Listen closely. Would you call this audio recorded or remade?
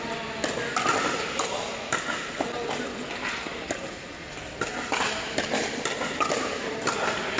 recorded